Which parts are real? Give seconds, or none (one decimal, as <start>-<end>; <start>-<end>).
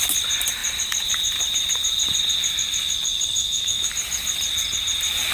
0.0-3.4; 3.9-5.3